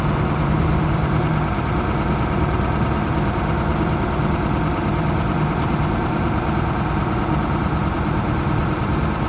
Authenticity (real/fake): fake